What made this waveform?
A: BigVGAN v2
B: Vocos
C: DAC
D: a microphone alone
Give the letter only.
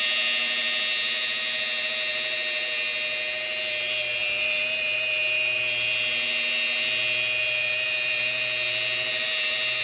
D